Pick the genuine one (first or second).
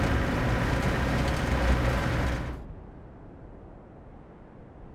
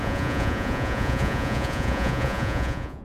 first